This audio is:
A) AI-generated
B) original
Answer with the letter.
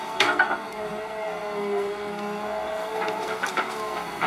A